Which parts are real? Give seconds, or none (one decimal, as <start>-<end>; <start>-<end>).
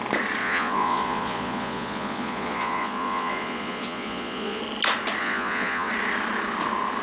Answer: 0.0-0.4; 4.6-5.2; 5.9-7.0